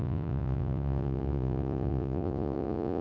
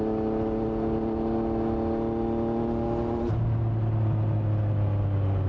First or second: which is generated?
first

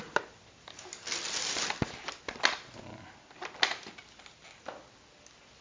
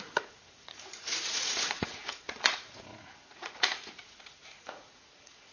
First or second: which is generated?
second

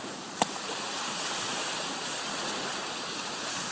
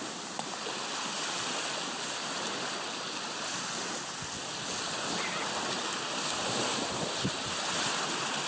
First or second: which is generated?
first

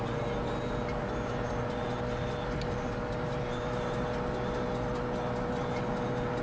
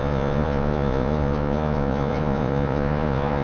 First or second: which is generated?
second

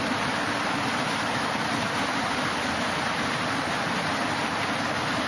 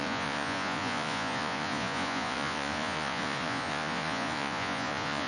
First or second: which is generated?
second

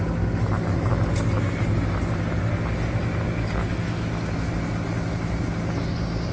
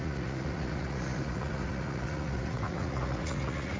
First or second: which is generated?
second